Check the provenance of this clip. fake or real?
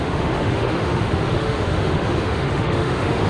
fake